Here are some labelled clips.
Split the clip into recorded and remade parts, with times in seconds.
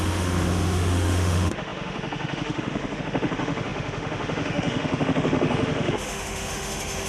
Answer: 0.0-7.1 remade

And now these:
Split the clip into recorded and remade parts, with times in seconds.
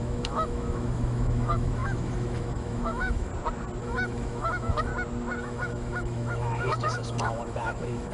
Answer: 0.0-3.3 remade; 3.3-3.8 recorded; 3.8-4.9 remade; 4.9-5.4 recorded; 5.4-8.1 remade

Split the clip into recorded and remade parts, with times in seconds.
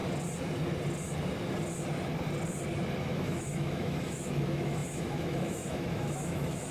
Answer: 0.0-3.0 recorded; 3.0-6.7 remade